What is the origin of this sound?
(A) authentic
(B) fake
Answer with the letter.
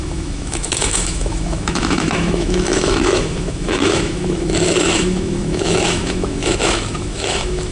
B